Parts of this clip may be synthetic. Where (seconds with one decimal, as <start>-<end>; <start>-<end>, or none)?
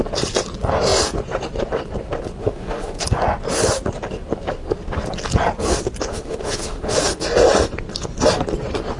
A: 2.4-3.0; 6.1-7.0